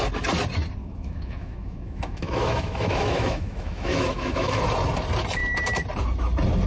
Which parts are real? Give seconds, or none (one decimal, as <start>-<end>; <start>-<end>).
0.0-0.8; 4.6-6.7